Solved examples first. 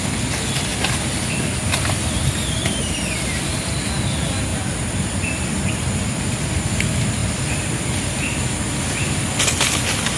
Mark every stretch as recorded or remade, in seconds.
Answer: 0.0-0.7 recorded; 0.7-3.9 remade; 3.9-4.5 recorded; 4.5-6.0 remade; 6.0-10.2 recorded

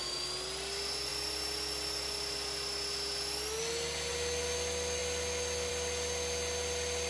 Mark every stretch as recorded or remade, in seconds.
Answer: 0.0-7.1 recorded

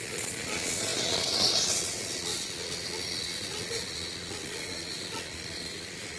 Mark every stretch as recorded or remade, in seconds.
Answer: 0.0-6.2 remade